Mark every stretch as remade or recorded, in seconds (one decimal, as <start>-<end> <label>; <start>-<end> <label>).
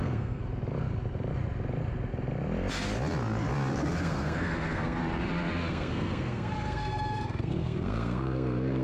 0.0-0.4 remade; 0.4-4.0 recorded; 4.0-5.0 remade; 5.0-5.7 recorded; 5.7-8.8 remade